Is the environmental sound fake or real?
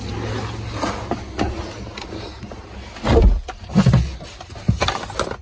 real